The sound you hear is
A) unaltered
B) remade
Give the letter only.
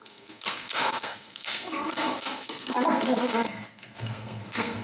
B